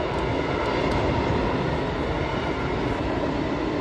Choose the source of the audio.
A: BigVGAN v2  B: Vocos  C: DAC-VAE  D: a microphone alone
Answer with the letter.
D